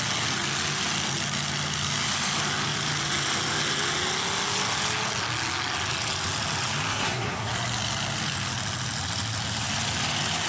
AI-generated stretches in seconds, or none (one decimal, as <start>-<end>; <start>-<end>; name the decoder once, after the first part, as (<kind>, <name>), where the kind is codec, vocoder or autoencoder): 6.9-7.5 (codec, SNAC)